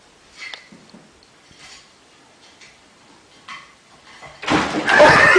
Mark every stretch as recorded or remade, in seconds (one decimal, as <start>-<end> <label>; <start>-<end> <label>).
0.0-5.4 recorded